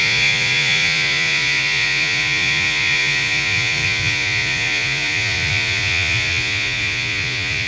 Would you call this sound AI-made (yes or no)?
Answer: yes